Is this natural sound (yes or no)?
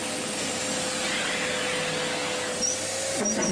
yes